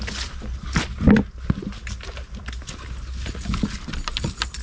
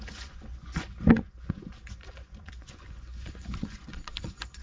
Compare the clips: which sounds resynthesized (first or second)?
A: second